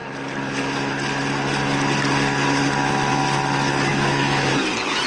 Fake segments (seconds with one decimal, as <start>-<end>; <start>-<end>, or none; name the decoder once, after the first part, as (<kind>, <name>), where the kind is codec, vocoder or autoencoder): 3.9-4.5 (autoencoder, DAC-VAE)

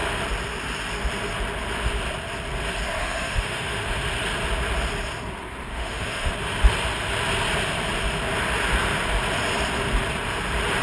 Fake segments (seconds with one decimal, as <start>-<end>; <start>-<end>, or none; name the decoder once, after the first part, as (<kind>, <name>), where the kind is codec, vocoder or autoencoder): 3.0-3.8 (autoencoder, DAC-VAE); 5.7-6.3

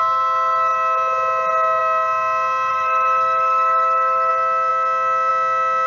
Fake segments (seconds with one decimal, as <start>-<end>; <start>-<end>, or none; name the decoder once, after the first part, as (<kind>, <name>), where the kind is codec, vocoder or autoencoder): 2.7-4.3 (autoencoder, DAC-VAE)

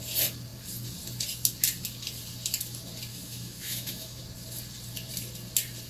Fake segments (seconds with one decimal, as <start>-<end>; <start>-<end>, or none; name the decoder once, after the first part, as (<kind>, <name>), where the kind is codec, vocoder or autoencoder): 3.1-4.2 (autoencoder, DAC-VAE)